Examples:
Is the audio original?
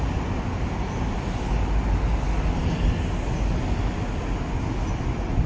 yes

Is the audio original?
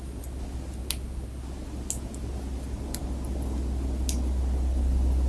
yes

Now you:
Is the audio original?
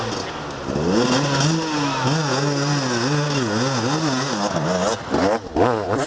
yes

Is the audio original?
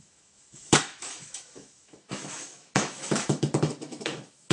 no